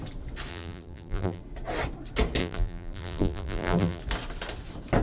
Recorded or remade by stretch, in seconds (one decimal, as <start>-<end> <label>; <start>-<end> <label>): 0.0-0.5 recorded; 0.5-1.4 remade; 1.4-2.4 recorded; 2.4-4.0 remade; 4.0-5.0 recorded